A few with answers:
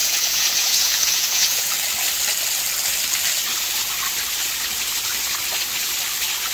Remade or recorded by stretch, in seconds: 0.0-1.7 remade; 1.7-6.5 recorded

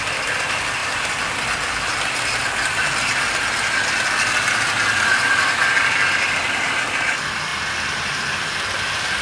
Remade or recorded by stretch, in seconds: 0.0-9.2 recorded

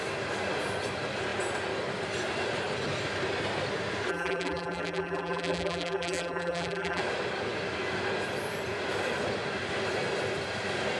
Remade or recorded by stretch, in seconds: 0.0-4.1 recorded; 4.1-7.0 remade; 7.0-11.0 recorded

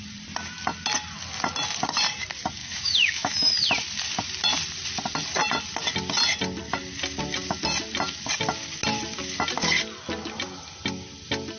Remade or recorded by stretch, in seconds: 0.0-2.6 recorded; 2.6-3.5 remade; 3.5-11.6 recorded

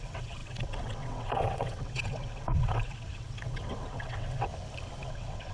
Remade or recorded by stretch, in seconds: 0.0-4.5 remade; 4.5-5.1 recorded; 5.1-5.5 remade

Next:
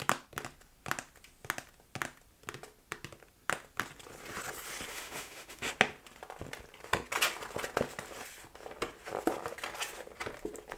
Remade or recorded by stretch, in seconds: 0.0-4.9 recorded; 4.9-5.7 remade; 5.7-10.8 recorded